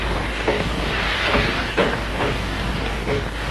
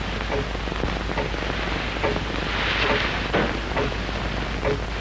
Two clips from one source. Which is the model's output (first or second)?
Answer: first